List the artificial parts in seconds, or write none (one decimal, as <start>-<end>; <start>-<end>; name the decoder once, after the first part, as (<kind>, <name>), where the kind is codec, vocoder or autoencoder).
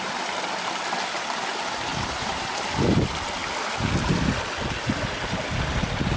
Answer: 1.9-2.5 (vocoder, BigVGAN v2)